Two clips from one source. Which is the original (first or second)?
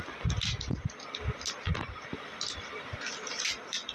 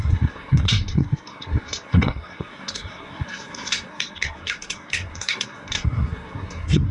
first